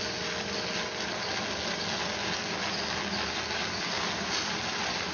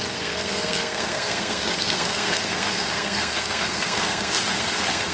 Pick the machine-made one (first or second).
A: second